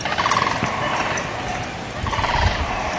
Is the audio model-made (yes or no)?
yes